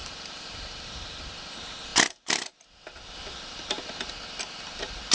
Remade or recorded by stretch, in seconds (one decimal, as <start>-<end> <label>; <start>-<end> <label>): 0.0-1.2 remade; 1.2-5.1 recorded